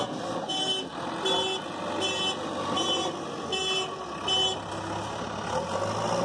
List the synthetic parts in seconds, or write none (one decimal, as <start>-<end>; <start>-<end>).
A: none